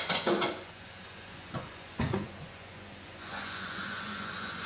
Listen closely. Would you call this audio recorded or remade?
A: remade